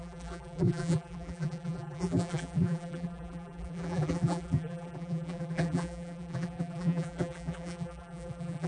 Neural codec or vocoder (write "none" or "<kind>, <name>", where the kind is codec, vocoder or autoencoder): vocoder, BigVGAN v2